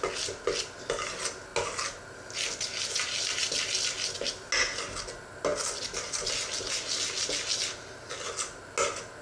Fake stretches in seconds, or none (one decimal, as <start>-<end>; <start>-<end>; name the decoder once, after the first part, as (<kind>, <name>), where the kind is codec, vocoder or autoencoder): none

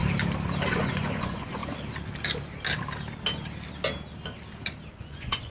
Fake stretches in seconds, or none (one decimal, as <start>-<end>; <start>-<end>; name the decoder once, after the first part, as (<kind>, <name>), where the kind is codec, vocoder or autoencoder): 0.7-1.6 (vocoder, Vocos); 4.9-5.5

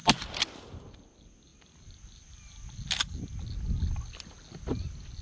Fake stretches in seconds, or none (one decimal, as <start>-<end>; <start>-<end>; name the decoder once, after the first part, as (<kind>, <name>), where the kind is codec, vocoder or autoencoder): none